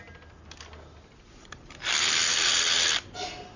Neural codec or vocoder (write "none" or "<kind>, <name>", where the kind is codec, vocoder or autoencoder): none